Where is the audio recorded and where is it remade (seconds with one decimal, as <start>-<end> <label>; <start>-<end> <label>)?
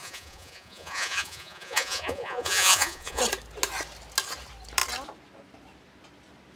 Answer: 0.0-3.2 remade; 3.2-6.6 recorded